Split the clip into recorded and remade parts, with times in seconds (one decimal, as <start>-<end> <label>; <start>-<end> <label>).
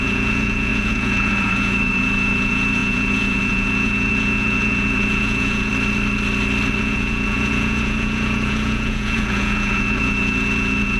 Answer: 0.0-5.7 remade; 5.7-6.8 recorded; 6.8-11.0 remade